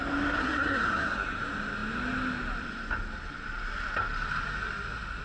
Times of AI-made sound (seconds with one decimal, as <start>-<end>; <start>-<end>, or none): 0.4-1.4

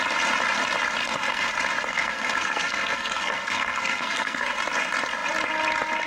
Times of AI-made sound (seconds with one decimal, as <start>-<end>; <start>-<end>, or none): 1.0-1.5; 1.9-4.6

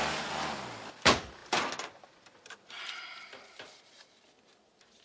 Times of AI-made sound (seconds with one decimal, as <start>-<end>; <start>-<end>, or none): none

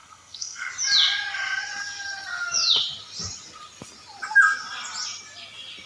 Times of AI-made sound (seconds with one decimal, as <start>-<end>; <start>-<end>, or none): 0.0-0.7

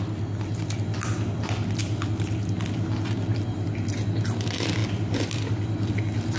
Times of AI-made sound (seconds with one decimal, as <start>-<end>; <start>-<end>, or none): none

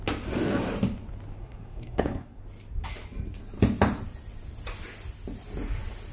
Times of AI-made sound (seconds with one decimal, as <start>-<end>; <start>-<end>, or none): 1.4-2.4